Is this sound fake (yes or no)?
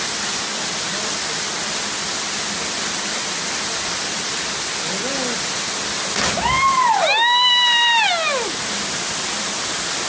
no